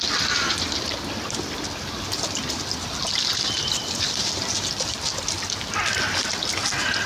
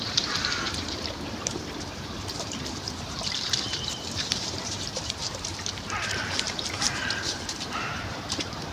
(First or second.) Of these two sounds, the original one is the first